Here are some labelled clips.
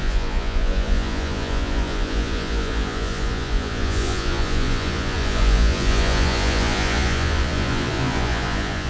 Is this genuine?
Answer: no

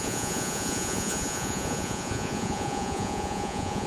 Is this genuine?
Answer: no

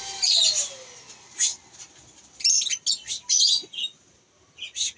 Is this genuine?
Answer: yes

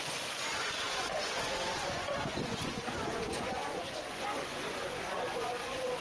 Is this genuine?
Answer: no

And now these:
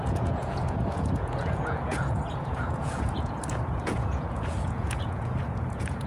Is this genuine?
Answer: no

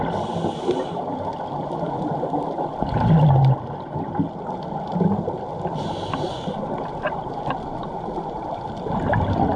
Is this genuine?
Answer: yes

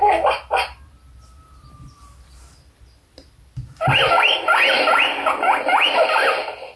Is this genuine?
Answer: yes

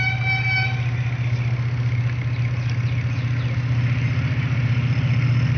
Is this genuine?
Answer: yes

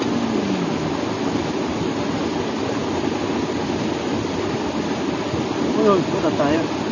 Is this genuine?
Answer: yes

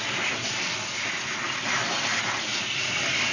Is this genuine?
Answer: yes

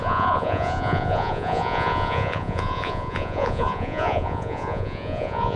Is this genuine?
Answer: no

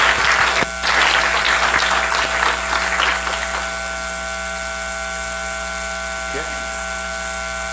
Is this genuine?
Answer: yes